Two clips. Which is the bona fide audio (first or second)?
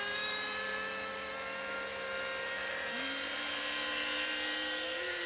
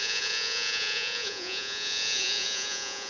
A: first